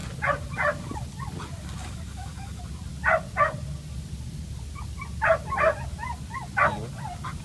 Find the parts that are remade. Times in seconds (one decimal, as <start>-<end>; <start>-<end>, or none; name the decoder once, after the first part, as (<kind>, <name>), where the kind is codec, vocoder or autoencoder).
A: 1.8-2.6 (codec, DAC)